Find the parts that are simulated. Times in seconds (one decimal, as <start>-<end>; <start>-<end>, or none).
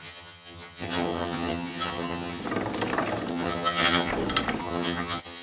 0.0-2.4; 3.3-4.1; 4.6-5.4